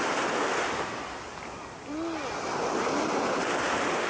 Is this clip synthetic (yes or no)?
no